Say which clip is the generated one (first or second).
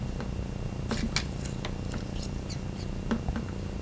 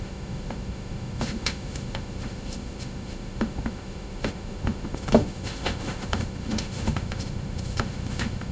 second